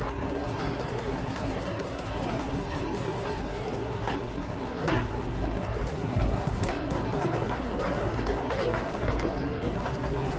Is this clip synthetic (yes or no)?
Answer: yes